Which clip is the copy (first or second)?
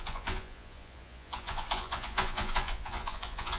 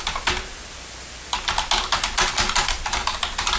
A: first